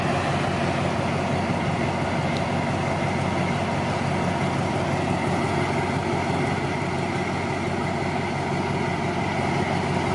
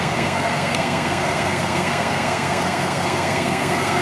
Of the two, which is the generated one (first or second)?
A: second